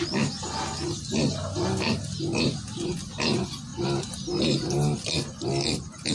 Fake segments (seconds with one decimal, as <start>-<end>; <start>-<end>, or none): none